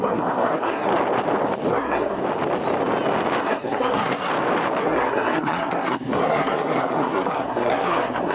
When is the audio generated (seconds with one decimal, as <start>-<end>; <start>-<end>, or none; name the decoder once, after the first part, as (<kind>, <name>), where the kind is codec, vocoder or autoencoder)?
0.0-0.9 (codec, SNAC); 1.7-2.2; 3.4-4.3; 4.8-8.3